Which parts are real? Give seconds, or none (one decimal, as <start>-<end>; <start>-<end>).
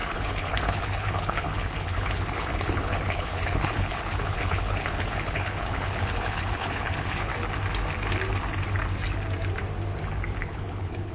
7.3-10.4